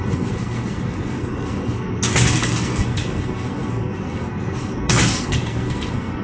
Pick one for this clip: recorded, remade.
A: remade